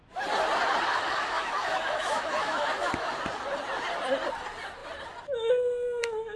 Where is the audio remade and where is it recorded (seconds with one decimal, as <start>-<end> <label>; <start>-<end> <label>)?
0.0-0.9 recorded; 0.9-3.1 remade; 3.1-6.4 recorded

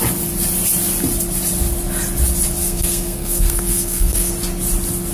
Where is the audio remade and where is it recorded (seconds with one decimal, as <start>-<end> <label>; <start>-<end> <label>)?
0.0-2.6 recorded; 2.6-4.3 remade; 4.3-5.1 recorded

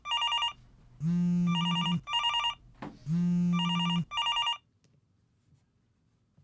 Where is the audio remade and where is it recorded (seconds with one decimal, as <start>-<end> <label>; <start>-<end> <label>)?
0.0-1.5 recorded; 1.5-2.6 remade; 2.6-6.4 recorded

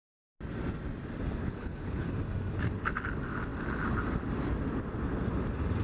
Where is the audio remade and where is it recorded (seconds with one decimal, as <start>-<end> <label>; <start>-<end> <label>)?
0.0-1.4 recorded; 1.4-2.1 remade; 2.1-5.8 recorded

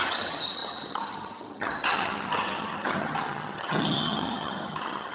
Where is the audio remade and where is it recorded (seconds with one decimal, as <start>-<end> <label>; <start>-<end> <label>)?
0.0-5.1 remade